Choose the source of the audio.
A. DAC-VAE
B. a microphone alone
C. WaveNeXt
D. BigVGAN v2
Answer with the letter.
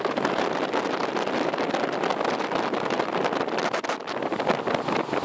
B